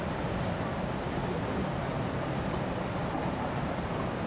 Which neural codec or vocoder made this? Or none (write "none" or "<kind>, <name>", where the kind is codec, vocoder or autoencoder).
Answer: none